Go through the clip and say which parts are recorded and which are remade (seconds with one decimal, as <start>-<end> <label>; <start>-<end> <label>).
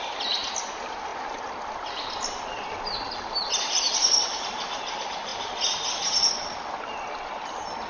0.0-7.9 recorded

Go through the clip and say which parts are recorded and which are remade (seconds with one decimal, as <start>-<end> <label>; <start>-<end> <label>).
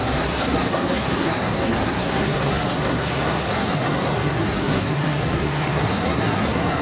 0.0-6.8 remade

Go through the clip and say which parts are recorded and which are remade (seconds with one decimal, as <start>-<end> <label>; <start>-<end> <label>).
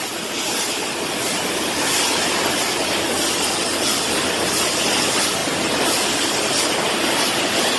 0.0-7.8 recorded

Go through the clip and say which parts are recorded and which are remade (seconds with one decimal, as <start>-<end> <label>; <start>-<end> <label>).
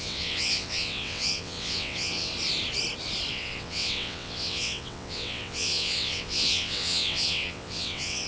0.0-2.3 remade; 2.3-3.3 recorded; 3.3-8.3 remade